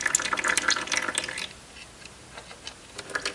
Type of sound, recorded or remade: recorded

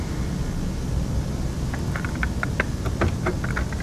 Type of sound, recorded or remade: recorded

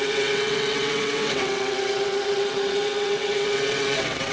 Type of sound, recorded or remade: remade